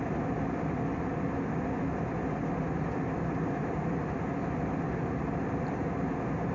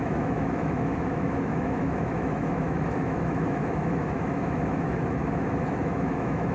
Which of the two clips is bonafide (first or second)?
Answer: first